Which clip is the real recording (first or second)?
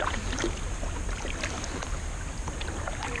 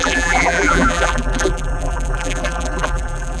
first